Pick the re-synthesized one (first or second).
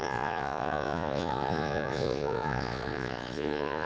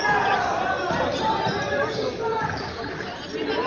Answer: first